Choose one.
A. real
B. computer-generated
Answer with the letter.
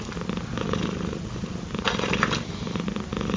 A